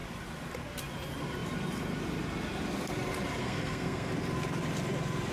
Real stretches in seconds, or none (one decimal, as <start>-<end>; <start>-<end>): 0.0-3.4; 4.1-5.3